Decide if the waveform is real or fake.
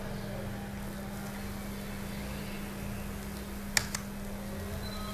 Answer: real